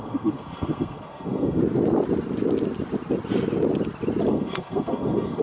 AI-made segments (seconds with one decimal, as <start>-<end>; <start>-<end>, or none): 0.0-1.6; 4.3-5.4